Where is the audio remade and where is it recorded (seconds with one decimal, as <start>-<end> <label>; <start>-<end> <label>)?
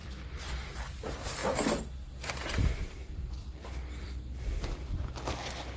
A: 0.0-0.7 remade; 0.7-3.4 recorded; 3.4-4.7 remade; 4.7-5.8 recorded